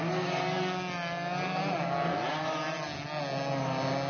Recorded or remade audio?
recorded